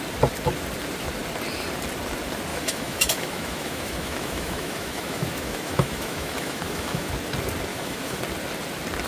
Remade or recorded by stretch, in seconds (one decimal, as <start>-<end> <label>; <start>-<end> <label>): 0.0-2.5 recorded; 2.5-7.1 remade; 7.1-7.7 recorded; 7.7-8.2 remade; 8.2-9.1 recorded